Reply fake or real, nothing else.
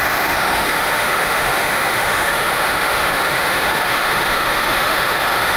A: fake